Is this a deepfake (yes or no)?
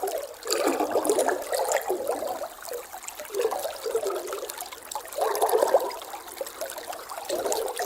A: no